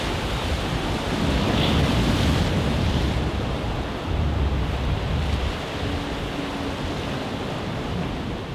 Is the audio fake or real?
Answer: real